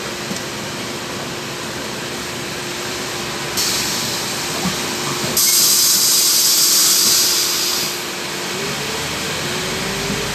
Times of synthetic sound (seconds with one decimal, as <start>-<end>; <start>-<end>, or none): 2.7-3.2; 6.8-7.5